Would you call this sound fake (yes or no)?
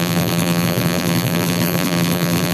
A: yes